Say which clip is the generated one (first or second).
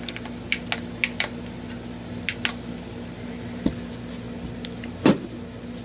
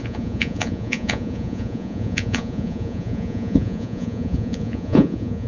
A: second